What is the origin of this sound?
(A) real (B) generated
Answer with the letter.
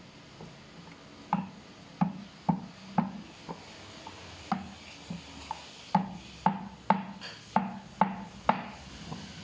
A